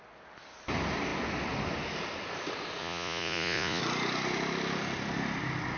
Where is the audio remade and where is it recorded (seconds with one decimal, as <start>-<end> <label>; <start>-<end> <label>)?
0.0-2.8 recorded; 2.8-3.8 remade; 3.8-5.8 recorded